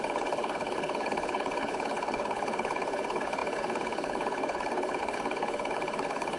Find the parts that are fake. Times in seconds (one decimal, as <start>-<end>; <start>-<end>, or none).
0.0-6.4